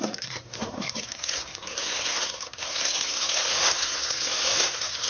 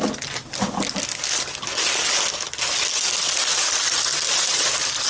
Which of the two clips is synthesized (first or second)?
first